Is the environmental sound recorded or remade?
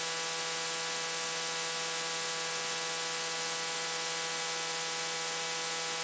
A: recorded